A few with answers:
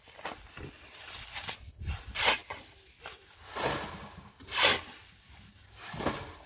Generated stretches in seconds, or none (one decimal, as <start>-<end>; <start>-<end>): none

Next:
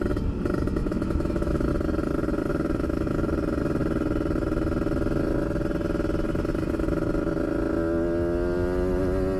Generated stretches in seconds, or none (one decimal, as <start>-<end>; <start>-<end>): 0.8-1.7; 2.5-3.3

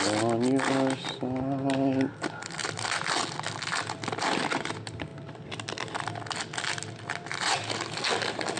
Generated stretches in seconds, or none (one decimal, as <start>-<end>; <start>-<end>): none

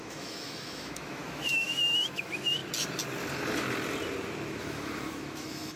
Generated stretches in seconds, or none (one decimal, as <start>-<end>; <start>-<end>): 0.0-2.6; 4.6-5.8